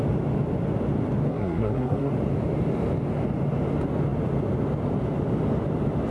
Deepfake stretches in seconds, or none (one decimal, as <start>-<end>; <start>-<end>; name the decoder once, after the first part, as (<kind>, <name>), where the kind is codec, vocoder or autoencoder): 1.3-2.1 (codec, SNAC)